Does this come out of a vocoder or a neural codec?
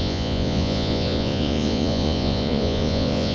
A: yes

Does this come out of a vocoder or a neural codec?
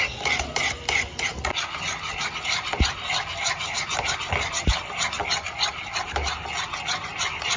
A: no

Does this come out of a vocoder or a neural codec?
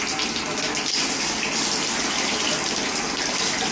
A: no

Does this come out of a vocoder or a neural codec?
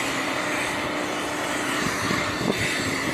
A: no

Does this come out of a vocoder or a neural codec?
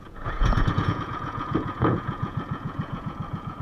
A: yes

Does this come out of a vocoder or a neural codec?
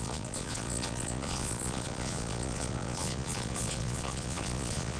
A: yes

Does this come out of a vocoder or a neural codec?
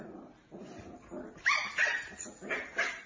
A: no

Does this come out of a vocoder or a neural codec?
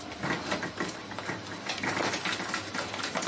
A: no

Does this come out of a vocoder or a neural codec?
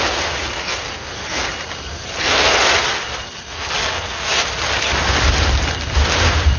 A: no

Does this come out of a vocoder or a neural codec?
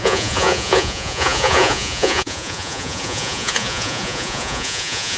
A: yes